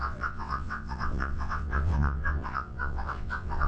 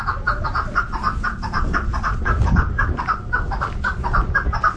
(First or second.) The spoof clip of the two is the first